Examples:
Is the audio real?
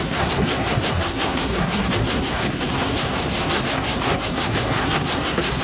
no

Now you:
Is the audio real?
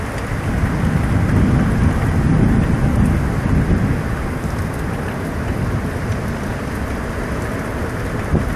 yes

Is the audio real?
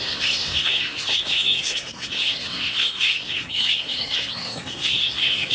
no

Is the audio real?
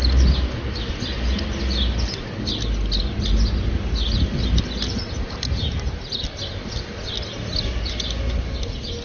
yes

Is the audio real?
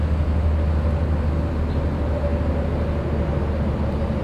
yes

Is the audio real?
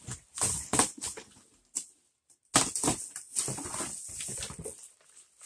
yes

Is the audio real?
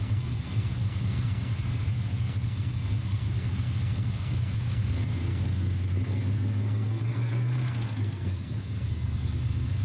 no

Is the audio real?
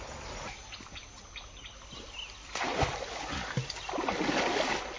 yes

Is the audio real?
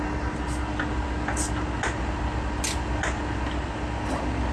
yes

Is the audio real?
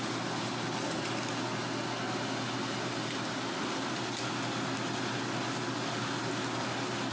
yes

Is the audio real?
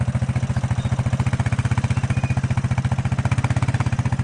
yes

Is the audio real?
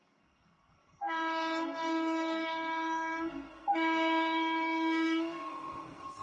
no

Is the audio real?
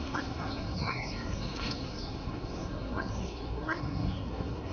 no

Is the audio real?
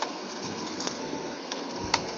no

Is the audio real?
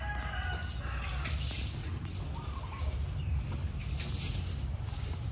yes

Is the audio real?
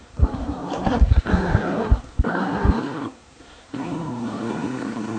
no